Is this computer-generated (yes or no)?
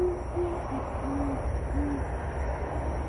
no